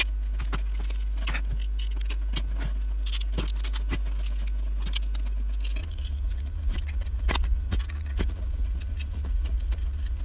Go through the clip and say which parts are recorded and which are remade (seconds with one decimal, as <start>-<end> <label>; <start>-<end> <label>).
0.0-5.8 recorded; 5.8-10.2 remade